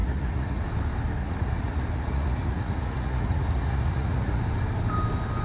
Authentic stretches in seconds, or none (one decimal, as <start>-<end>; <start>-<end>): 0.6-1.2; 4.4-5.4